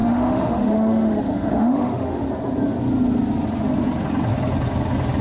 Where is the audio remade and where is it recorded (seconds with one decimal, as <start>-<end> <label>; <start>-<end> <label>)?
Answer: 0.0-2.3 remade; 2.3-5.2 recorded